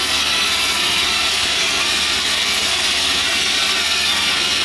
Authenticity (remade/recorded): remade